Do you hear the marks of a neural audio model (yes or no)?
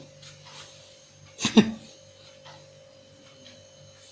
no